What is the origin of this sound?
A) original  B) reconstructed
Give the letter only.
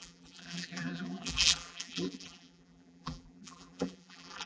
B